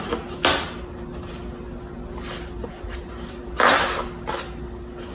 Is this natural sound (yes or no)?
yes